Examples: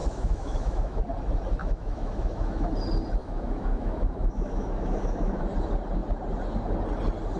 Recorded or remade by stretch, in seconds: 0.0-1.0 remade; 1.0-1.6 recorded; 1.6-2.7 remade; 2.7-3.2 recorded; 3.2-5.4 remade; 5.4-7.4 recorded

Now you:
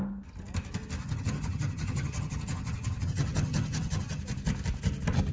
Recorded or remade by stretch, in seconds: 0.0-1.0 recorded; 1.0-4.2 remade; 4.2-5.3 recorded

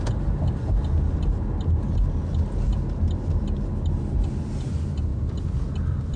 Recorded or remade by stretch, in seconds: 0.0-6.2 recorded

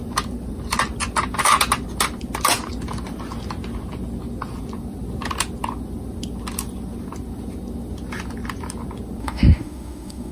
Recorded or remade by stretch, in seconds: 0.0-9.2 recorded; 9.2-10.3 remade

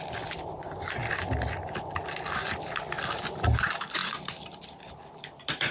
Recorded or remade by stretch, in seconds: 0.0-1.0 remade; 1.0-3.6 recorded; 3.6-5.7 remade